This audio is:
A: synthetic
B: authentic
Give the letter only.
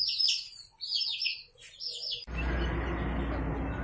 B